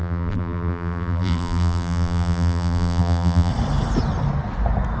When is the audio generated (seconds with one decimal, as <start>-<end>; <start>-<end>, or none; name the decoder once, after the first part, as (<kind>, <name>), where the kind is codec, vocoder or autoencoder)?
0.0-3.5 (vocoder, BigVGAN v2)